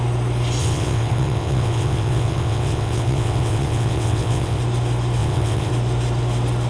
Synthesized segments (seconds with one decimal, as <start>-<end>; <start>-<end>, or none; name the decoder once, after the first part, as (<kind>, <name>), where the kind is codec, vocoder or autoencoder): 0.6-4.6 (vocoder, WaveNeXt); 5.2-5.7